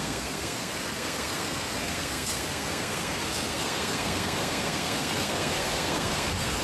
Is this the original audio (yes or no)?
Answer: no